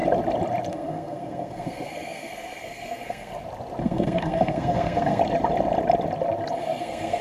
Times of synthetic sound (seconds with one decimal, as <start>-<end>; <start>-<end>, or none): 0.7-3.3; 3.8-5.2; 6.6-7.2